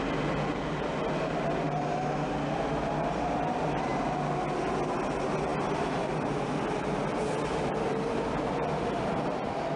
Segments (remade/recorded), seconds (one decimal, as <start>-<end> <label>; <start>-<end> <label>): 0.0-9.8 recorded